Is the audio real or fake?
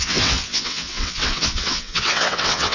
fake